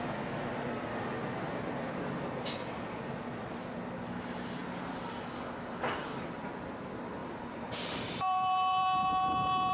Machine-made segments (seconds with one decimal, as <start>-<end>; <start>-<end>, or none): 1.2-2.5; 7.2-9.7